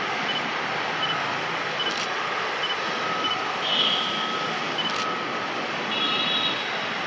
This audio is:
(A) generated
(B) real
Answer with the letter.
B